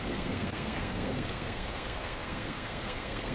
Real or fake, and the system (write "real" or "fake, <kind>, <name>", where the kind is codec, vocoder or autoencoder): fake, codec, SNAC